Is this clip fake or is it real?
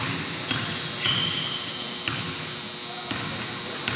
real